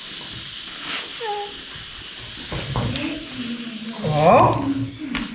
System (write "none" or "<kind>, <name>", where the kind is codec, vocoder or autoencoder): none